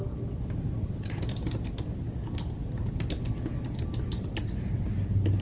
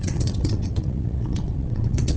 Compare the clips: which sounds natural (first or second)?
first